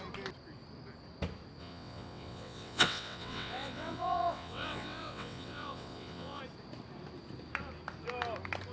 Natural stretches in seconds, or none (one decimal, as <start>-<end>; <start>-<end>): 0.0-1.6; 6.4-8.7

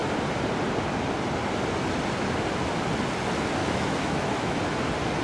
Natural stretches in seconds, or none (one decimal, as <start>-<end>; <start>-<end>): 0.0-3.6; 4.6-5.2

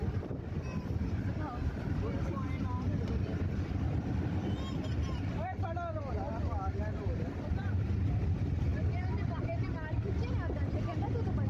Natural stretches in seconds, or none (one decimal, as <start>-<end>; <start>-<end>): 0.0-11.5

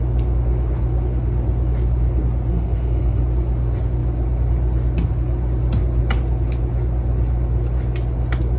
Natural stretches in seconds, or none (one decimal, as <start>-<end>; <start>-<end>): 0.0-2.5; 3.2-8.6

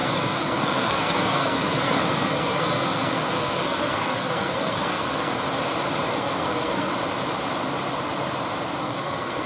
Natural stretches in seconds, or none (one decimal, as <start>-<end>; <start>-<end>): 5.3-6.1; 6.9-8.8